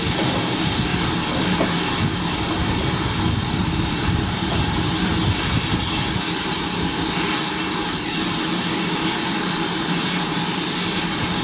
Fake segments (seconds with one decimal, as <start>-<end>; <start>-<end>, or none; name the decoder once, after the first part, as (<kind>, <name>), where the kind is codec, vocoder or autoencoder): none